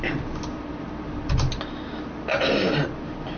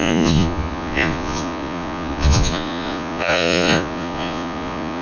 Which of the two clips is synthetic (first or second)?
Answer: second